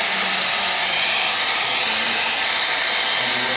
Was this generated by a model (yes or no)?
no